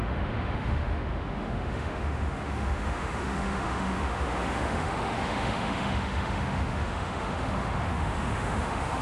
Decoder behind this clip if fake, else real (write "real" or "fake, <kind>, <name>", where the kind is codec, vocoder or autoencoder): fake, autoencoder, DAC-VAE